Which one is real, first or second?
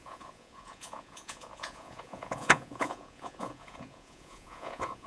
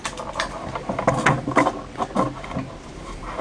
second